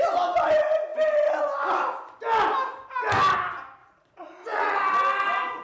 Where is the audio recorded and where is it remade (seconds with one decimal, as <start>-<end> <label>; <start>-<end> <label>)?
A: 0.0-3.8 recorded; 3.8-4.8 remade; 4.8-5.6 recorded